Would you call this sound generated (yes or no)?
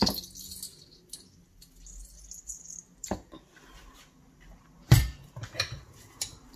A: no